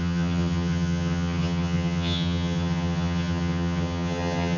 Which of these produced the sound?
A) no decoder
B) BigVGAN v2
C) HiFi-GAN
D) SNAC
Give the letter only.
C